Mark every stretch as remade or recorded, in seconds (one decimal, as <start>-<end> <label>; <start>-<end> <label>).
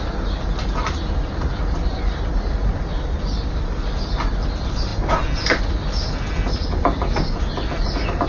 0.0-8.3 recorded